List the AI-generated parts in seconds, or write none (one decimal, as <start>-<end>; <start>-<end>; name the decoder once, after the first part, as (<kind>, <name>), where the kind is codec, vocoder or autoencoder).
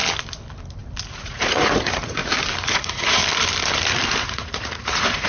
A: 1.2-2.2 (vocoder, Vocos); 2.7-3.2; 4.2-5.3